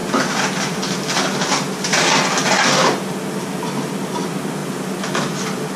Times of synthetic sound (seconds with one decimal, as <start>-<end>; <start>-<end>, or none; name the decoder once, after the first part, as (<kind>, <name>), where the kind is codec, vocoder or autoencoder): none